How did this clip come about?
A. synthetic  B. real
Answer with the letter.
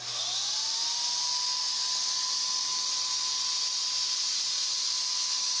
B